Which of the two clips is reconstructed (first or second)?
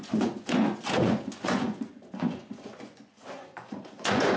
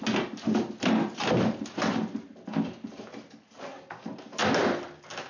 first